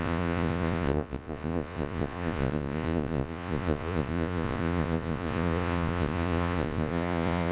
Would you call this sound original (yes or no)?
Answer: no